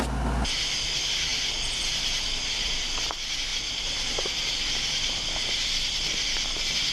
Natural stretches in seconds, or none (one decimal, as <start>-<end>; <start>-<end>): 0.0-6.9